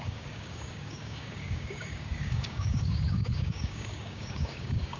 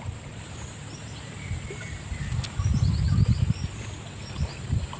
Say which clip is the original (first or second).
second